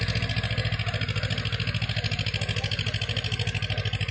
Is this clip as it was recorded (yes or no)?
yes